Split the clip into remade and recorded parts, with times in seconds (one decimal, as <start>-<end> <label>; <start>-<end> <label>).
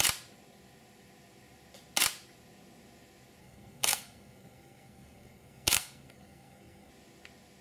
0.0-3.4 recorded; 3.4-6.9 remade; 6.9-7.6 recorded